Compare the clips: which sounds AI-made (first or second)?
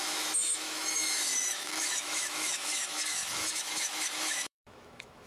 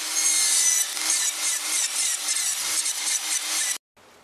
first